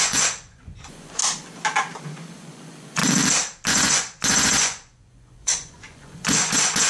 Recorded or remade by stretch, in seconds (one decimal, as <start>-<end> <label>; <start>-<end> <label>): 0.0-1.2 remade; 1.2-2.0 recorded; 2.0-3.0 remade; 3.0-3.7 recorded; 3.7-6.9 remade